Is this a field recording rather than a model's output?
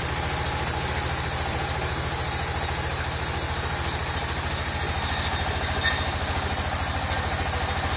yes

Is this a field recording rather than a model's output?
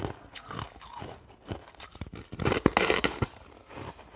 yes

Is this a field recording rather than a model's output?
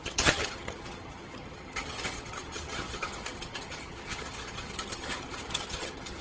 no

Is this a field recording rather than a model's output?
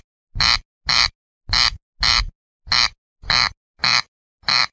yes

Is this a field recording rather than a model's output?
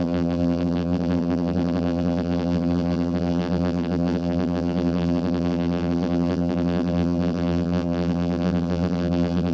no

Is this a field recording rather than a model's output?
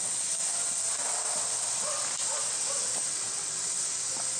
yes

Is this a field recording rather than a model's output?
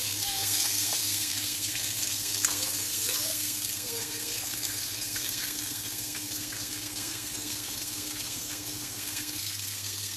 no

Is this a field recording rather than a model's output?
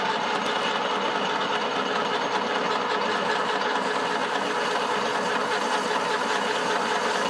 yes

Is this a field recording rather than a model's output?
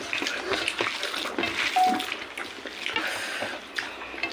yes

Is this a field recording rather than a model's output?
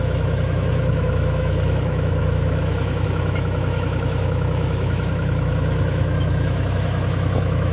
no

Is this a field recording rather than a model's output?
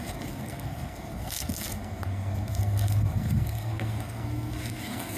no